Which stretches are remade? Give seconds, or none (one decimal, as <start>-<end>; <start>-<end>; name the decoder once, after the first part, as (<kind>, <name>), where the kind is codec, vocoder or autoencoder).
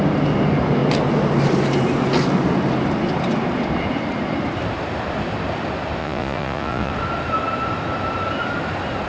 6.0-6.9 (vocoder, Vocos)